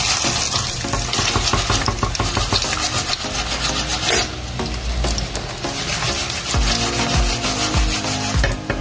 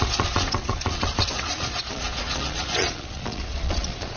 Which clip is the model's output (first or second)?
second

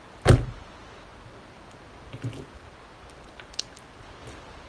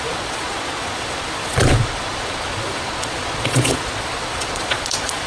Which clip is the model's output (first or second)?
second